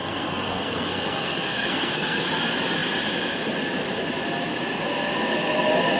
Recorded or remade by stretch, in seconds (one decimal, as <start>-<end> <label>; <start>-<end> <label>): 0.0-2.2 remade; 2.2-6.0 recorded